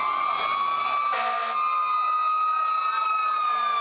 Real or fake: real